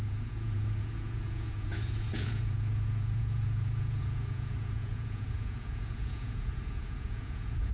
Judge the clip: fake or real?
fake